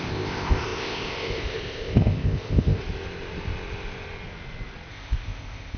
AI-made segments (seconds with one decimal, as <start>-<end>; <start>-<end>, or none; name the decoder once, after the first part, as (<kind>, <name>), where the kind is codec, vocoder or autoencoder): 0.0-2.8 (codec, ZipCodec); 4.9-5.8

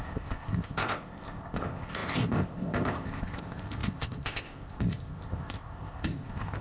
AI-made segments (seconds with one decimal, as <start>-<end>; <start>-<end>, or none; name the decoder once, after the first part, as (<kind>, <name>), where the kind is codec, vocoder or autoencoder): 0.0-6.6 (codec, ZipCodec)

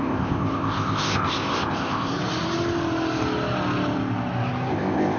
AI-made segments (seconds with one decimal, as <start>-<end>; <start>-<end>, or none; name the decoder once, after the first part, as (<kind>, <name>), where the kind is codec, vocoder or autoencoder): 0.0-2.1 (codec, ZipCodec); 4.7-5.2

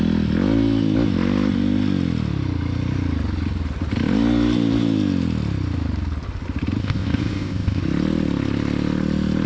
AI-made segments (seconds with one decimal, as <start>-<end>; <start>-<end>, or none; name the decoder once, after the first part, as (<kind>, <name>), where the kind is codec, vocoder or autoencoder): 6.8-7.8 (codec, ZipCodec)

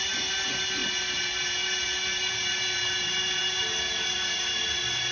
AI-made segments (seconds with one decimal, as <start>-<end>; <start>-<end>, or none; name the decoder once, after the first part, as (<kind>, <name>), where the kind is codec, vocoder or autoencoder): none

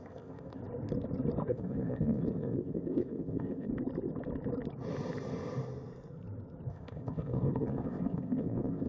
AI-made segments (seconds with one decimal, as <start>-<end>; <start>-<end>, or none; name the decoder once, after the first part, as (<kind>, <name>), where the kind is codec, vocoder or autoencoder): 0.0-0.6 (codec, ZipCodec); 1.5-3.7; 6.7-8.9